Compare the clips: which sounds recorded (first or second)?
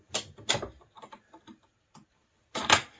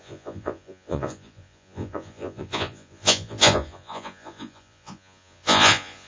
first